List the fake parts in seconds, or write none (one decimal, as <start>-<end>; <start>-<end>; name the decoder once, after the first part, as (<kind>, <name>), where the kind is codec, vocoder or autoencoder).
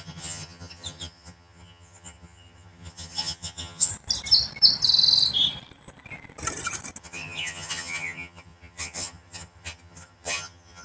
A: 0.0-3.9 (vocoder, HiFi-GAN); 7.0-10.8